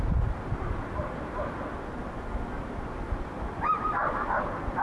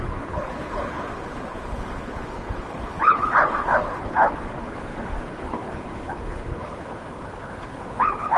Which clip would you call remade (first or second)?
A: second